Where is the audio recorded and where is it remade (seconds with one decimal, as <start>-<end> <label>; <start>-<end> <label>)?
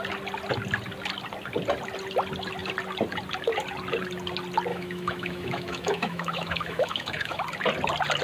0.0-4.7 recorded; 4.7-7.4 remade; 7.4-8.2 recorded